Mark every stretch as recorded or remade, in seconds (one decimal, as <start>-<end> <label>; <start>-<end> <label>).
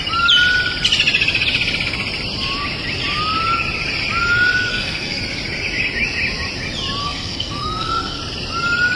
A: 0.0-4.7 recorded; 4.7-5.2 remade; 5.2-7.0 recorded; 7.0-8.2 remade; 8.2-9.0 recorded